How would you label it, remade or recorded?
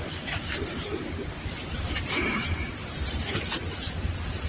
remade